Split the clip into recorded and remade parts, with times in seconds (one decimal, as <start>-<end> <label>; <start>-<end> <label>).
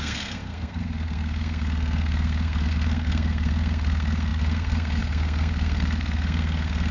0.0-6.9 remade